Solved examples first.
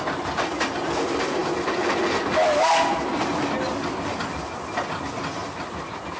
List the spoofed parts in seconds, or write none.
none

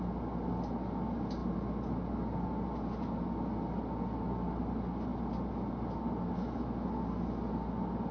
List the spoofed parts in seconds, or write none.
none

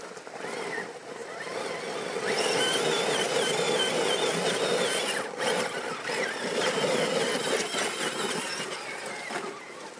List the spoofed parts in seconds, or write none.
none

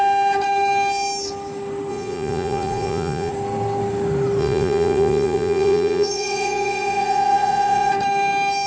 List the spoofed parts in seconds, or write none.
1.9-3.3 (vocoder, Vocos); 4.4-7.9

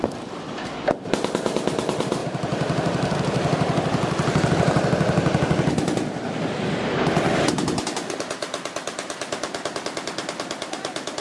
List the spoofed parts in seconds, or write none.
2.2-5.7 (vocoder, BigVGAN v2)

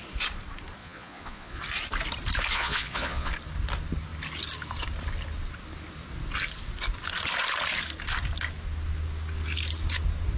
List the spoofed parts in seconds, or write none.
0.8-1.6 (vocoder, Vocos); 2.5-3.3